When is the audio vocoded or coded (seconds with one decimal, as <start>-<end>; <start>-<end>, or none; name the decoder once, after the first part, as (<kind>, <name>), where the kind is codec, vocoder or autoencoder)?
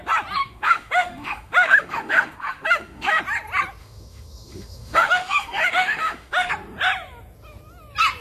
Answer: 0.4-3.2 (autoencoder, DAC-VAE); 3.8-6.5